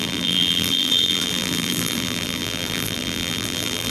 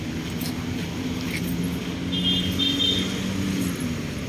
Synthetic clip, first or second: first